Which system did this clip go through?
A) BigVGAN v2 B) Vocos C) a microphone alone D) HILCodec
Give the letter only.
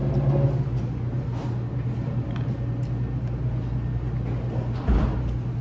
C